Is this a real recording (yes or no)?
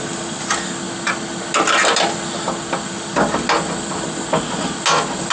yes